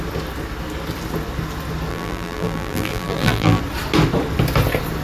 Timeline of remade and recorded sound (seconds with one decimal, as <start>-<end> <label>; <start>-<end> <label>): 0.0-1.9 recorded; 1.9-3.6 remade; 3.6-5.0 recorded